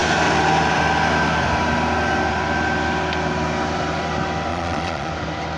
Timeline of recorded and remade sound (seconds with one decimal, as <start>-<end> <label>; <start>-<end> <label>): 0.0-4.5 recorded; 4.5-5.1 remade; 5.1-5.6 recorded